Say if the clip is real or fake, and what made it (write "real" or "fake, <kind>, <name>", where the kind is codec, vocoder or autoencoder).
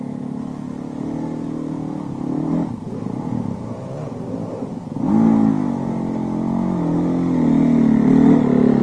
real